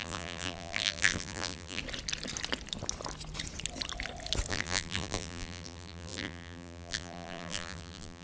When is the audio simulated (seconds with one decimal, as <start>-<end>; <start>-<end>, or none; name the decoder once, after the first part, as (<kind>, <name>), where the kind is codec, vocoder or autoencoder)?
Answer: 0.0-1.8 (vocoder, BigVGAN v2); 4.5-8.2